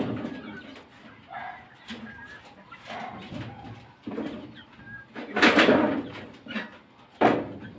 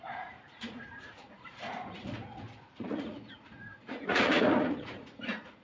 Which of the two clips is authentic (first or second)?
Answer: first